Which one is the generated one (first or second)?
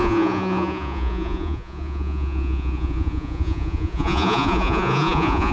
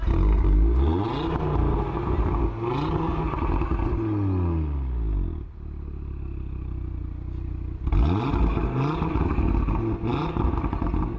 first